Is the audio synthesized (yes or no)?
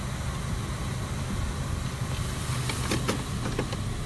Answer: no